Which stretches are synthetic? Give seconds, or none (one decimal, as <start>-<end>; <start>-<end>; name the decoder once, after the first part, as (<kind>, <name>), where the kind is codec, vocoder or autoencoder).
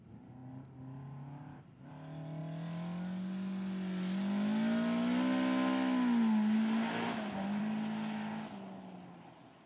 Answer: none